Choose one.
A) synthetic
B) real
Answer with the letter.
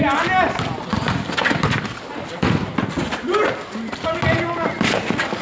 B